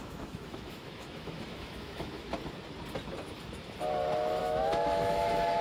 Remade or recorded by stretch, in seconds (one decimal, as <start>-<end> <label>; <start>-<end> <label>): 0.0-2.3 remade; 2.3-4.4 recorded; 4.4-5.6 remade